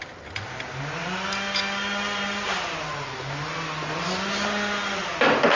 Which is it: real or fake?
real